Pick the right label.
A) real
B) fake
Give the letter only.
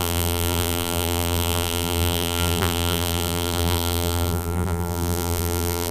B